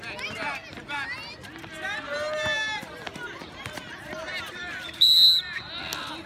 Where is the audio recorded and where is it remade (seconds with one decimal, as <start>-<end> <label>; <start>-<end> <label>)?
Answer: 0.0-6.3 recorded